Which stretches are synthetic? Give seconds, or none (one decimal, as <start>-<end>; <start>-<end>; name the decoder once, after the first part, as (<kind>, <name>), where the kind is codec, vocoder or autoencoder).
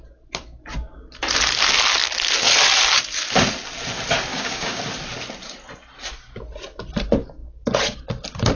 4.3-4.8 (codec, DAC)